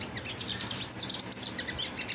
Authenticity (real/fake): real